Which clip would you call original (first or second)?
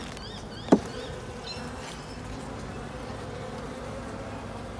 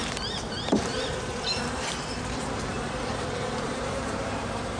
first